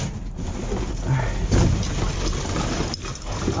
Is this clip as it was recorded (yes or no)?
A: yes